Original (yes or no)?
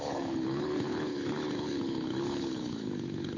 no